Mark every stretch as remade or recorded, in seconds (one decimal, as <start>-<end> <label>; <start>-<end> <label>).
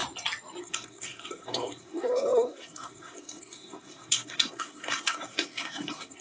0.0-0.6 recorded; 0.6-6.2 remade